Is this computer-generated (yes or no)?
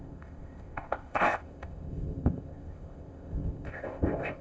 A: yes